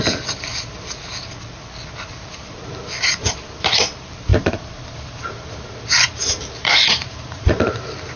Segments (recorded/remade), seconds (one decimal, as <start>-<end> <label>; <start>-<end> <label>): 0.0-4.3 recorded; 4.3-7.6 remade; 7.6-8.2 recorded